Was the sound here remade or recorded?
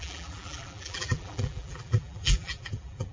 remade